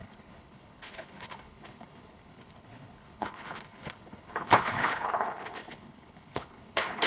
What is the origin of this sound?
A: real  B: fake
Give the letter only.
B